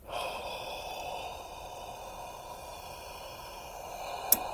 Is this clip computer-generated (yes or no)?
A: no